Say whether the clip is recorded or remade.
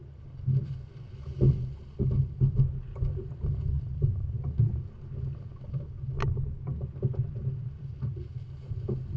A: recorded